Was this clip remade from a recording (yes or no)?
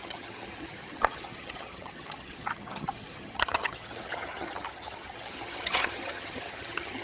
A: yes